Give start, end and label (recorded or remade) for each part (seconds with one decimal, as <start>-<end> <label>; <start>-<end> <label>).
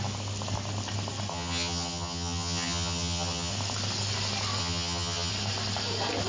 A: 0.0-1.3 recorded; 1.3-3.5 remade; 3.5-4.6 recorded; 4.6-5.3 remade; 5.3-6.3 recorded